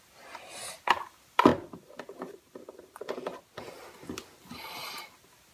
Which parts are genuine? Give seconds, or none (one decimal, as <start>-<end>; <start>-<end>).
0.0-5.5